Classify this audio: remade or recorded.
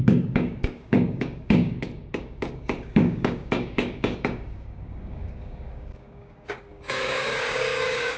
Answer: remade